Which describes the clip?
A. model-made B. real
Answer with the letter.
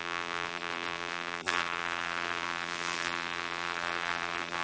A